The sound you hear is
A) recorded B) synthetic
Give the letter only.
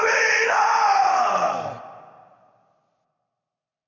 A